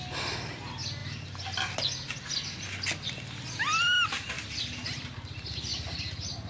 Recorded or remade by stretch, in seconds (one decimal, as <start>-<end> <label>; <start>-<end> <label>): 0.0-6.5 recorded